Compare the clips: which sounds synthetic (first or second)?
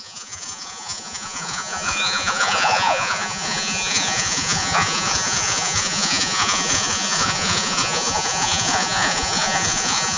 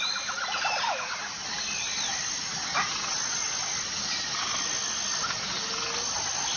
first